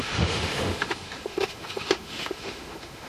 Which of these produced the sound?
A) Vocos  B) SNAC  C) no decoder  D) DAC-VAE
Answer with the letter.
D